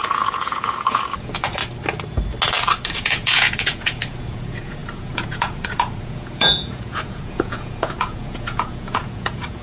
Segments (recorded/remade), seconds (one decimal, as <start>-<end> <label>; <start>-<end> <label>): 0.0-1.6 remade; 1.6-2.9 recorded; 2.9-9.6 remade